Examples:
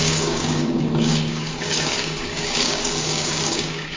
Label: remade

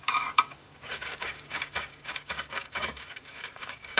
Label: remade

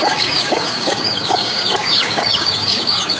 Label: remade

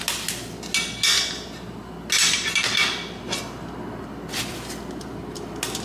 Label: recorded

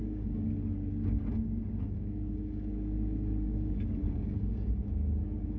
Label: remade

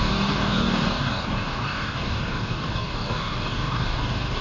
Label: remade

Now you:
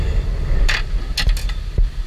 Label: recorded